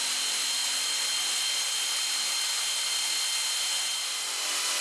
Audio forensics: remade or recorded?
recorded